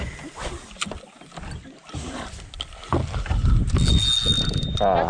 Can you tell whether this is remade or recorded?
recorded